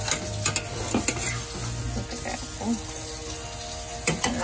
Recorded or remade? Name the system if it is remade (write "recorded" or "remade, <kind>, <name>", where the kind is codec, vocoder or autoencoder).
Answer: recorded